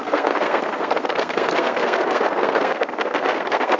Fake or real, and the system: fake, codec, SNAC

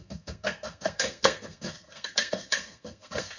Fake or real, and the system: fake, codec, SNAC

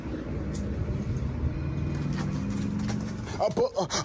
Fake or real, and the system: real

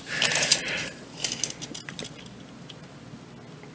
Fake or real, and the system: real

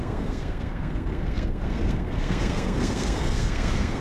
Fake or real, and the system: fake, codec, SNAC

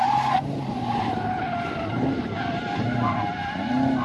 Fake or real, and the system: real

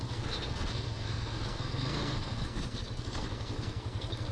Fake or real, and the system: fake, codec, SNAC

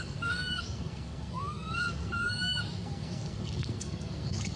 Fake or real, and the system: fake, codec, SNAC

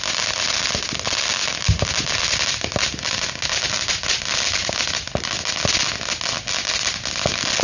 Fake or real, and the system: real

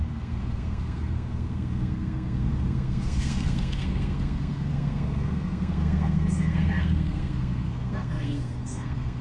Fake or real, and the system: fake, codec, SNAC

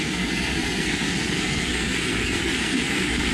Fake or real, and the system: fake, codec, SNAC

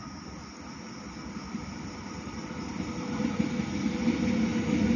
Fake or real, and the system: real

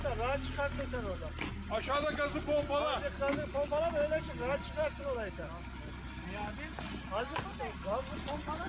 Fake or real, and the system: real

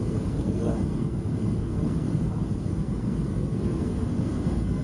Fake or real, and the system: fake, codec, SNAC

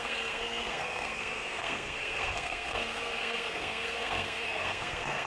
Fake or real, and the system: fake, codec, SNAC